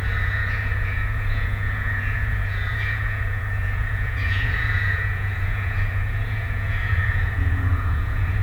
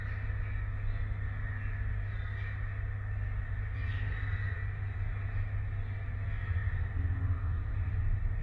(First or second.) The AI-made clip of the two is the first